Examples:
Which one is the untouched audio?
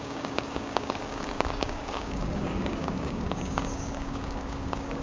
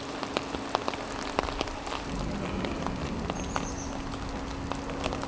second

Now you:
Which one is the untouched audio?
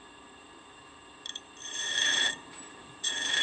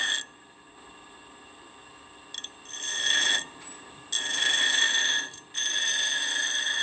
second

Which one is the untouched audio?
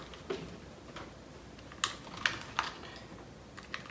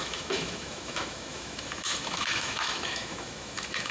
first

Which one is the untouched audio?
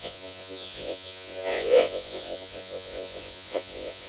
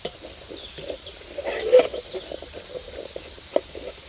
second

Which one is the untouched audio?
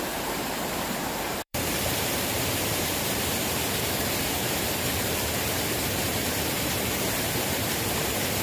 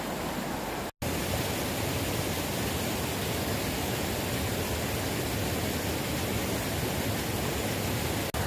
second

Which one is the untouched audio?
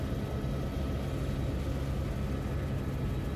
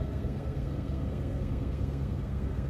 first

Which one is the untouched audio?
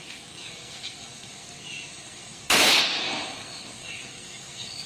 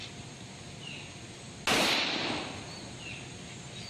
second